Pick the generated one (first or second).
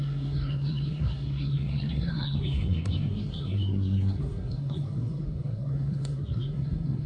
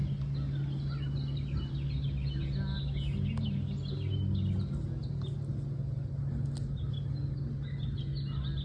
first